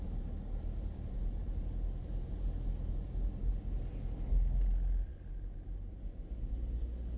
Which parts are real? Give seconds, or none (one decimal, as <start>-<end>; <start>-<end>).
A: 0.0-7.2